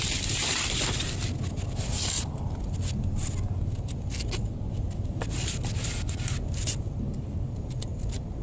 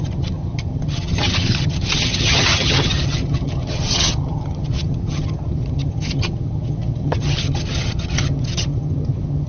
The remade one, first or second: second